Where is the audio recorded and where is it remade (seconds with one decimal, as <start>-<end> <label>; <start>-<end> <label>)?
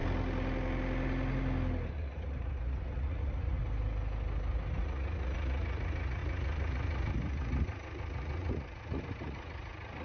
0.0-1.9 recorded; 1.9-3.6 remade; 3.6-4.8 recorded; 4.8-10.0 remade